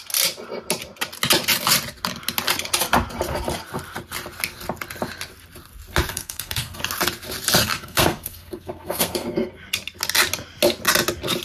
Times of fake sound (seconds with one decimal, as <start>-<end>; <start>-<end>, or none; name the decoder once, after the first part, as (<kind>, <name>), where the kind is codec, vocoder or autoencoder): 6.1-6.8 (codec, SNAC); 7.6-9.5